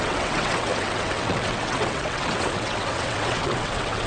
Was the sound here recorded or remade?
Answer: remade